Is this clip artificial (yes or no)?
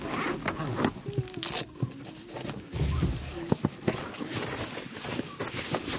no